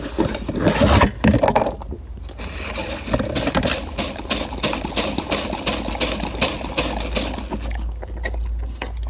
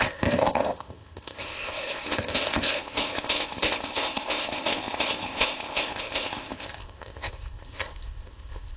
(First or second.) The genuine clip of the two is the first